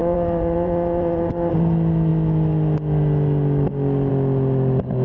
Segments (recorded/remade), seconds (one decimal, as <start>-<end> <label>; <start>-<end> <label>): 0.0-1.5 remade; 1.5-5.0 recorded